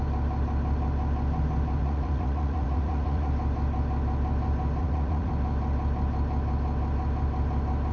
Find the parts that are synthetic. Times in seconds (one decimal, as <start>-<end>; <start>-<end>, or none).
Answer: 1.8-3.3; 4.8-5.3